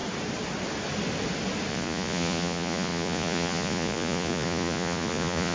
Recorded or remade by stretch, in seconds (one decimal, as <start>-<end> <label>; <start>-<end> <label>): 0.0-1.7 recorded; 1.7-5.5 remade

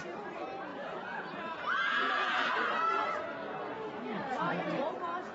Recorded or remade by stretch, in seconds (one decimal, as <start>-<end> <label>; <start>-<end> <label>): 0.0-0.7 recorded; 0.7-2.5 remade; 2.5-5.3 recorded

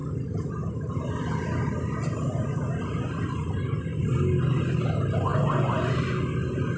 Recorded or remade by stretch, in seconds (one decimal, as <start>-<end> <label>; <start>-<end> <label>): 0.0-6.8 recorded

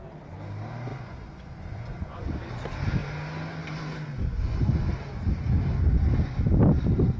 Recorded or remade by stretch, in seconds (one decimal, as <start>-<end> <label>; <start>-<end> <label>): 0.0-0.9 recorded; 0.9-2.5 remade; 2.5-4.1 recorded; 4.1-4.9 remade; 4.9-7.2 recorded

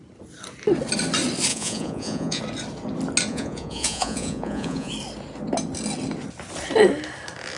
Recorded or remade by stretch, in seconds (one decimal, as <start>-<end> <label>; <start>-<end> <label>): 0.0-1.5 recorded; 1.5-2.4 remade; 2.4-3.3 recorded; 3.3-4.9 remade; 4.9-7.6 recorded

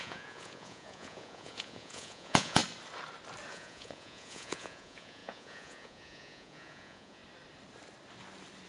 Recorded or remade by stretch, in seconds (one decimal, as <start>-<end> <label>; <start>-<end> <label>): 0.0-2.6 remade; 2.6-3.5 recorded; 3.5-7.2 remade; 7.2-8.7 recorded

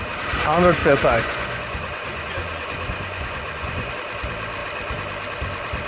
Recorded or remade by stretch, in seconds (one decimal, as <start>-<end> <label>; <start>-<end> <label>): 0.0-0.8 recorded; 0.8-3.9 remade; 3.9-5.9 recorded

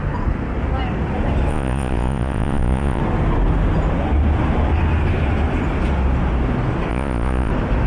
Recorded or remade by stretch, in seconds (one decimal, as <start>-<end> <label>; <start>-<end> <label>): 0.0-1.5 recorded; 1.5-3.0 remade; 3.0-6.9 recorded; 6.9-7.5 remade; 7.5-7.9 recorded